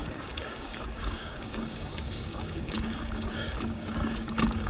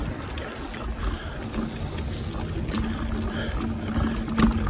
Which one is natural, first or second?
second